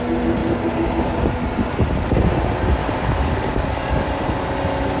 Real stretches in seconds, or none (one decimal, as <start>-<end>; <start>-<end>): 0.0-2.8; 4.1-5.0